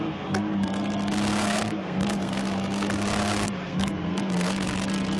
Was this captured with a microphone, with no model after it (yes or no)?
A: no